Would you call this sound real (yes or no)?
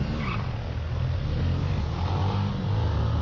yes